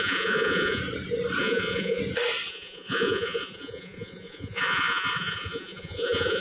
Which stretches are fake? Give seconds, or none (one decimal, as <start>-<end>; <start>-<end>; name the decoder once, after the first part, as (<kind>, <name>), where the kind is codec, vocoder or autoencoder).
0.0-0.8 (vocoder, Vocos); 1.4-2.0; 2.5-6.4